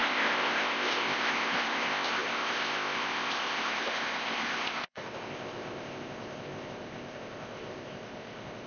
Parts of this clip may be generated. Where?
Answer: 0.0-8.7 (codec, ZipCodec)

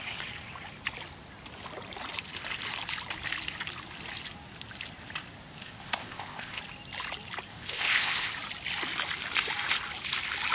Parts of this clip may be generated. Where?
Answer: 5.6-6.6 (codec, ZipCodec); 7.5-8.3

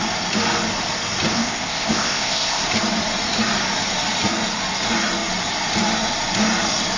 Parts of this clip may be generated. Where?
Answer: 1.3-2.6 (codec, ZipCodec)

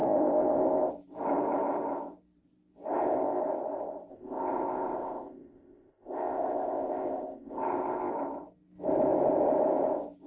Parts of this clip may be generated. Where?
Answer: 0.0-0.9 (codec, ZipCodec); 2.9-3.4; 4.1-8.1

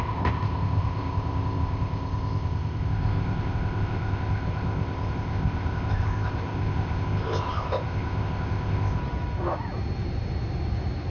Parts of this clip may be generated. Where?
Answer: 0.0-9.0 (codec, ZipCodec)

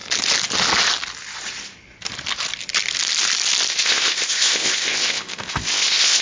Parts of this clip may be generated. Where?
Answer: 3.7-6.2 (codec, ZipCodec)